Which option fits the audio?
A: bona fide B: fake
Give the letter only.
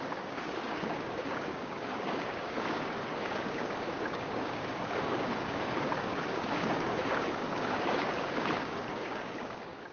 B